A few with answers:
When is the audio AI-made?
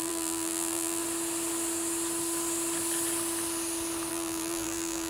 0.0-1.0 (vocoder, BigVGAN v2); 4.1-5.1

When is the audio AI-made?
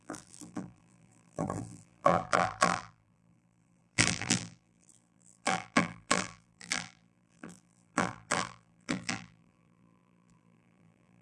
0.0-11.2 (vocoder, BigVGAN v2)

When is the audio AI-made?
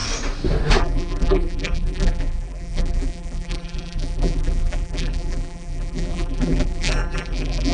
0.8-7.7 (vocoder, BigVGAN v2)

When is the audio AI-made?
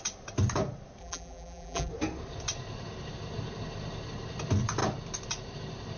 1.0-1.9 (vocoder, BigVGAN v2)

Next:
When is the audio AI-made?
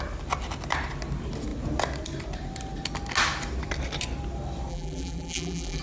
4.7-5.8 (vocoder, BigVGAN v2)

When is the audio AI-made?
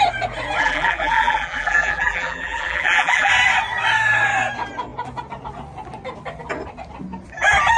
0.6-3.3 (vocoder, BigVGAN v2)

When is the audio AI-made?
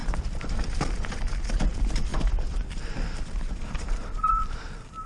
1.7-5.1 (vocoder, BigVGAN v2)